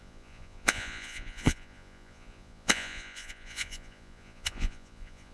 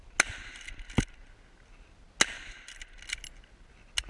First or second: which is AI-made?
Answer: first